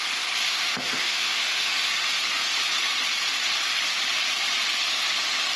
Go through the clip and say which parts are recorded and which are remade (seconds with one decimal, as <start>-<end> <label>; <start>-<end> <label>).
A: 0.0-0.4 recorded; 0.4-1.9 remade; 1.9-5.6 recorded